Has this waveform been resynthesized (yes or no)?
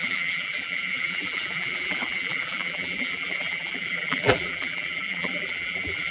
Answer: yes